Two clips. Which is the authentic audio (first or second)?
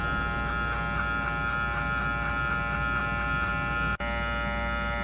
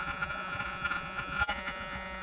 first